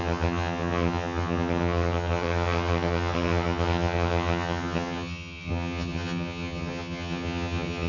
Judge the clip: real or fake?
fake